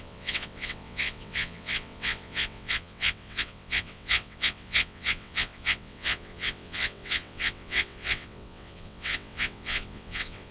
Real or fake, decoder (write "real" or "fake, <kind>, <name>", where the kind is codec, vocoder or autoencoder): fake, vocoder, WaveNeXt